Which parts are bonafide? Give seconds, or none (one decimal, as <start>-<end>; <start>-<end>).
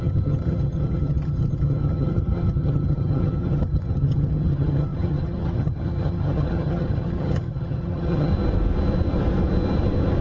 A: 8.3-10.2